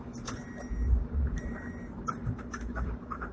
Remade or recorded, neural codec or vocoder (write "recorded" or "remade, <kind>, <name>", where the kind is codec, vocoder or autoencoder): remade, vocoder, BigVGAN v2